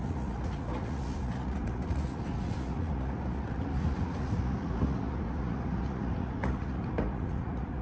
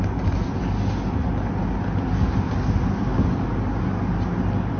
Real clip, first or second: second